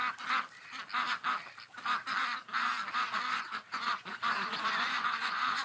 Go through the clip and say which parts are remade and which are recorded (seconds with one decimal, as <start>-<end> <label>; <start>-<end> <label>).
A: 0.0-3.4 recorded; 3.4-5.6 remade